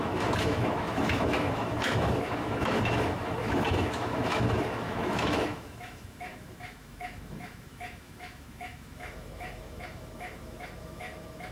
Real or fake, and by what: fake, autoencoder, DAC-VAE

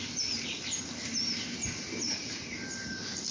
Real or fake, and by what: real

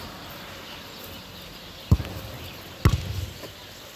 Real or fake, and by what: real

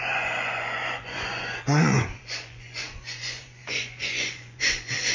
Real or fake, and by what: fake, vocoder, Vocos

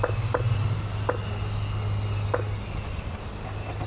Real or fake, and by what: real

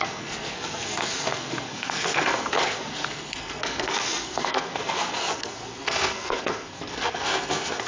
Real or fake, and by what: fake, codec, SNAC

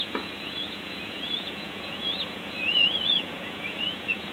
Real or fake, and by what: fake, vocoder, Vocos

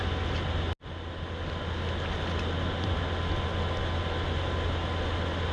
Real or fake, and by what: real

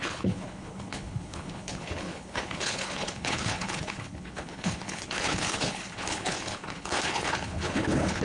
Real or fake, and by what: fake, codec, HILCodec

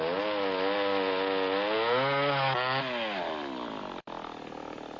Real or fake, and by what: real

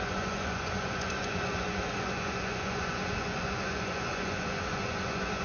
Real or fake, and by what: fake, vocoder, Vocos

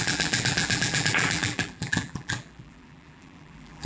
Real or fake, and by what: fake, vocoder, BigVGAN v2